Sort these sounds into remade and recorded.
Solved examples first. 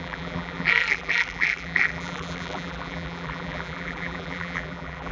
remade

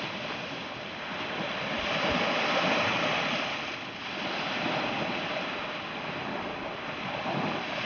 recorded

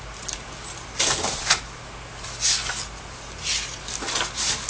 recorded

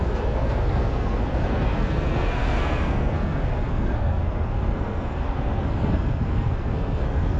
remade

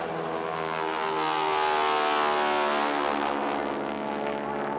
recorded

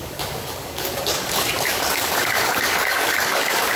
remade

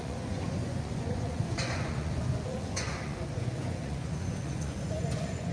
remade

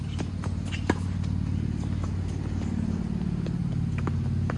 recorded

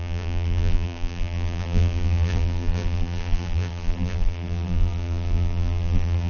remade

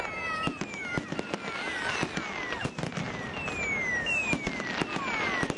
recorded